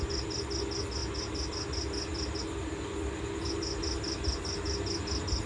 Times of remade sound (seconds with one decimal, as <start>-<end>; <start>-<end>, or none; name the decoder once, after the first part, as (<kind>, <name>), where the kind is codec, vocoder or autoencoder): none